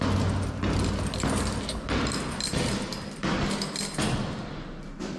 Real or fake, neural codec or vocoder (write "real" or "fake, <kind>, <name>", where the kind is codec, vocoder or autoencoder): real